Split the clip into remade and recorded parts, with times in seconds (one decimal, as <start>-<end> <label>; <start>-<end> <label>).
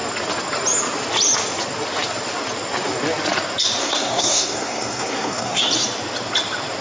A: 0.0-3.8 recorded; 3.8-5.6 remade; 5.6-6.8 recorded